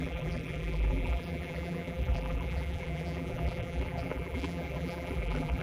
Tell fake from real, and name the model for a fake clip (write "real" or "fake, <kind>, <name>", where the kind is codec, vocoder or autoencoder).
fake, vocoder, BigVGAN v2